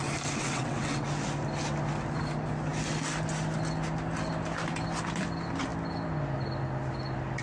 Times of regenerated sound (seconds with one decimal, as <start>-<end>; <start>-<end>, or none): 0.4-1.1